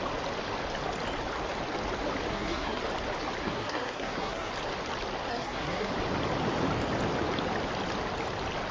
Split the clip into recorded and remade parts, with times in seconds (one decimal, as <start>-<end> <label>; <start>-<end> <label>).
0.0-2.3 recorded; 2.3-2.8 remade; 2.8-3.4 recorded; 3.4-4.5 remade; 4.5-5.3 recorded; 5.3-5.9 remade; 5.9-8.7 recorded